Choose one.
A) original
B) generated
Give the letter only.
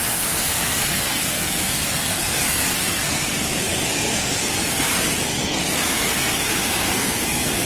B